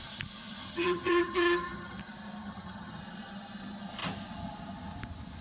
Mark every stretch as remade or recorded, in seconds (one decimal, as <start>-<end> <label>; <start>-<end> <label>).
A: 0.0-0.6 recorded; 0.6-2.0 remade; 2.0-2.4 recorded; 2.4-3.0 remade; 3.0-5.4 recorded